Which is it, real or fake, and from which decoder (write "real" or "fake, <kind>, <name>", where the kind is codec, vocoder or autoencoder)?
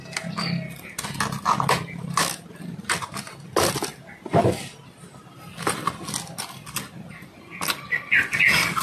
real